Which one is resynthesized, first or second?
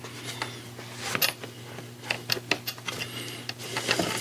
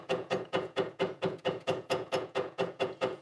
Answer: second